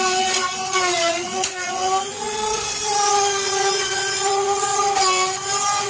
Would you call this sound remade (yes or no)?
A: yes